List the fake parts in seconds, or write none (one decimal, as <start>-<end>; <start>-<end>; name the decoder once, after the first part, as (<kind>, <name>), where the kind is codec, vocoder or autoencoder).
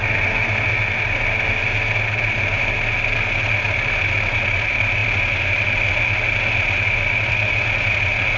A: none